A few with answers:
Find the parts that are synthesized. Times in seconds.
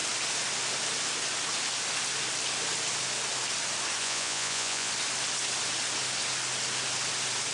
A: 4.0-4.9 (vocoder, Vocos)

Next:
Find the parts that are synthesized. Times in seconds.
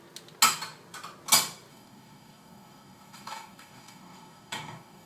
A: 1.7-5.1 (codec, DAC)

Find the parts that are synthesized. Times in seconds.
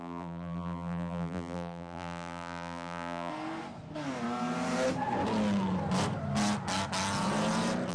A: 0.0-3.3 (vocoder, BigVGAN v2)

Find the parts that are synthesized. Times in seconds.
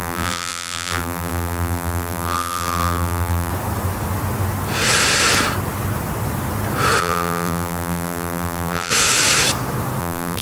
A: 0.0-3.5 (vocoder, BigVGAN v2); 7.0-8.9; 10.0-10.4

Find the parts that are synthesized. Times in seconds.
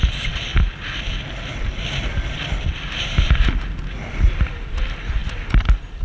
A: 0.5-1.1 (vocoder, BigVGAN v2)